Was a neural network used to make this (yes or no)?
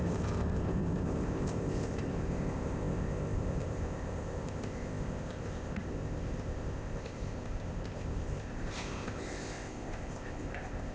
yes